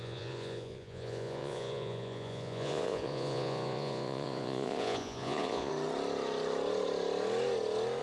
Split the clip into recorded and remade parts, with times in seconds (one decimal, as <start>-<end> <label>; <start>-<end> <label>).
0.0-5.7 remade; 5.7-8.0 recorded